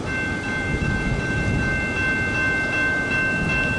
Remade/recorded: recorded